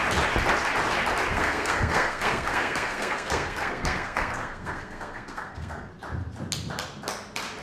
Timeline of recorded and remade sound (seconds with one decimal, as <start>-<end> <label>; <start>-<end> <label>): 0.0-1.3 recorded; 1.3-5.9 remade; 5.9-7.6 recorded